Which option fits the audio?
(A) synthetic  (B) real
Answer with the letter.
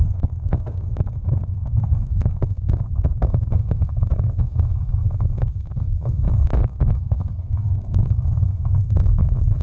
A